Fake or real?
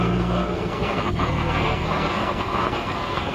fake